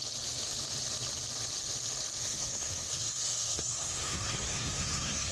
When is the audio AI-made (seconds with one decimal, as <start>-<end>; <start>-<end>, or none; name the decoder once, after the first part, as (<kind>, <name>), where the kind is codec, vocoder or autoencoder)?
2.2-5.3 (codec, SNAC)